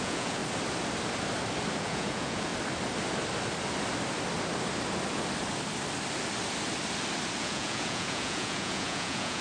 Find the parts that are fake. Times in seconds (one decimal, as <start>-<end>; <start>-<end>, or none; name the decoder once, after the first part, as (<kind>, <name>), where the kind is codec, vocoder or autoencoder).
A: 0.0-0.4 (vocoder, Vocos); 1.8-2.5; 7.4-9.4